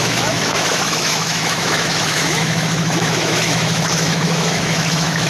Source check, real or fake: fake